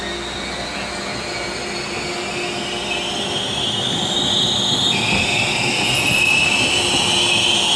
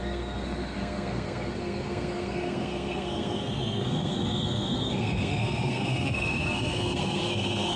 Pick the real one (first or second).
first